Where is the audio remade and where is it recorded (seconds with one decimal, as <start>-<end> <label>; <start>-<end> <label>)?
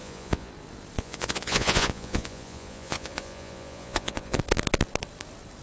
0.0-0.5 remade; 0.5-1.0 recorded; 1.0-4.4 remade; 4.4-5.6 recorded